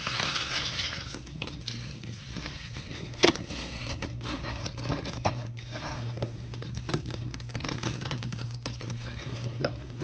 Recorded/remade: remade